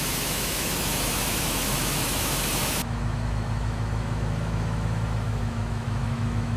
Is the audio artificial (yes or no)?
yes